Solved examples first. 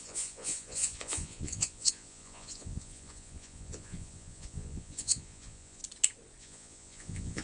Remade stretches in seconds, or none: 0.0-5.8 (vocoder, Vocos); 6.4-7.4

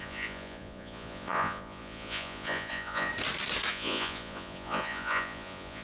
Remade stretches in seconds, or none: 0.0-3.1 (vocoder, Vocos); 3.7-5.8